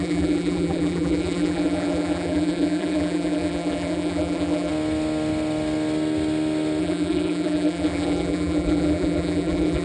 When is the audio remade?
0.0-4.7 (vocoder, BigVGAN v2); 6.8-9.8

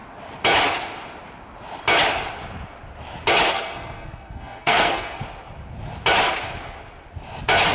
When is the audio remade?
3.5-5.2 (codec, SNAC)

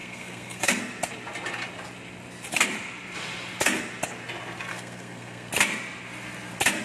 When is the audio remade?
0.0-0.8 (codec, SNAC); 4.7-5.5

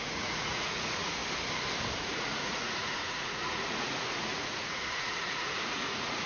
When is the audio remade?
0.0-1.2 (vocoder, Vocos); 2.0-6.3